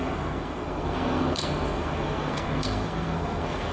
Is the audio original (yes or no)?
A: no